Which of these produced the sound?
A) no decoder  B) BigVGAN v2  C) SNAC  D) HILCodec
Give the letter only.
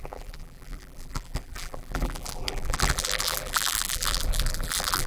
B